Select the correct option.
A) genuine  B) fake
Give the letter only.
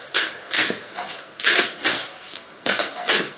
B